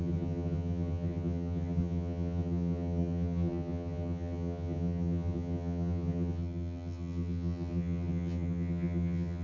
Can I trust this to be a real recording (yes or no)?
no